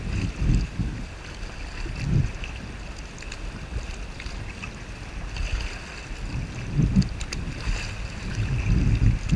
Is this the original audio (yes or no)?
yes